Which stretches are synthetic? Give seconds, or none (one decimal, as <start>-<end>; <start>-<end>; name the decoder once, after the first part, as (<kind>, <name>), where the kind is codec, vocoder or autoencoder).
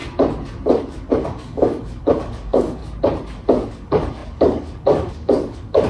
0.8-2.8 (codec, DAC); 3.7-5.9